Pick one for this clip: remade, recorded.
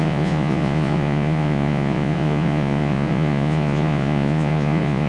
remade